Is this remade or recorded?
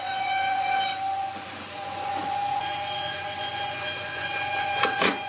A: remade